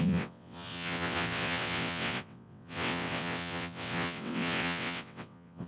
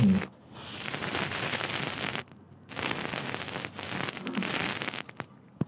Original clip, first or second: second